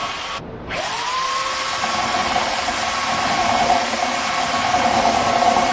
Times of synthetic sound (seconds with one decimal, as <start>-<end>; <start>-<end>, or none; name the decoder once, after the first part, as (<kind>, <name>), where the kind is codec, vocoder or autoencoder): 0.0-5.7 (vocoder, BigVGAN v2)